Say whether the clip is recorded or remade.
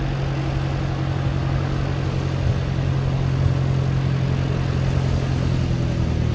recorded